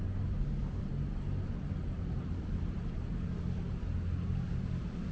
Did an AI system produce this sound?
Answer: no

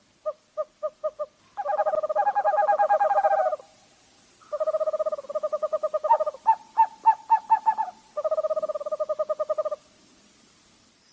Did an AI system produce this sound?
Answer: no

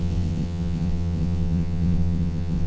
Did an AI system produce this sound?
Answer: yes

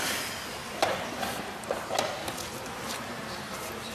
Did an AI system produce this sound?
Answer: no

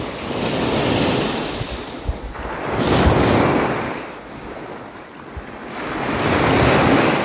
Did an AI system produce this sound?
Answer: no